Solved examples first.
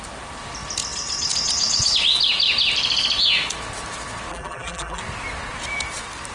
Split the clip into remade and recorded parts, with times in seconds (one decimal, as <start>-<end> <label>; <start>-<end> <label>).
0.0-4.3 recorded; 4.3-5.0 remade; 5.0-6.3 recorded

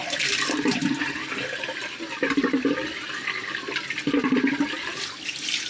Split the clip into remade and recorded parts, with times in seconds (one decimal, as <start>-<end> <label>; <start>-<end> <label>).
0.0-5.7 recorded

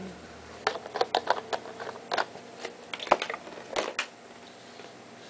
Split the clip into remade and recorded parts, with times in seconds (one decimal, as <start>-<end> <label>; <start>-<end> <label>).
0.0-0.6 remade; 0.6-5.3 recorded

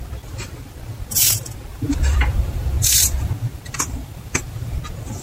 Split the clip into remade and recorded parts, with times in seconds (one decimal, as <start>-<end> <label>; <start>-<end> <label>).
0.0-1.7 recorded; 1.7-4.8 remade; 4.8-5.2 recorded